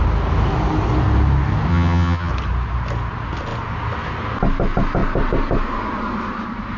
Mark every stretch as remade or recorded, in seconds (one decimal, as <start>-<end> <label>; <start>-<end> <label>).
0.0-1.7 recorded; 1.7-2.3 remade; 2.3-6.8 recorded